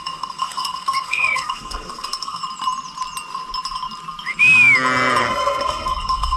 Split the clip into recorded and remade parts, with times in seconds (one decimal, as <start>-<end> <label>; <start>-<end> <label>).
0.0-2.4 remade; 2.4-5.2 recorded; 5.2-6.4 remade